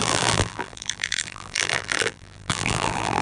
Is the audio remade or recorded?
remade